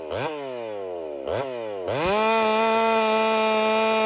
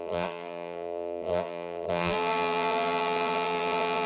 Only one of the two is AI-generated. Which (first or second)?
second